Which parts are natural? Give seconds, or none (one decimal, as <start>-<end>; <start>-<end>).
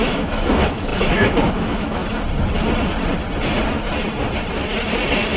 2.0-5.4